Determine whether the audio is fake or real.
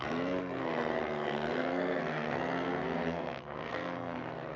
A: fake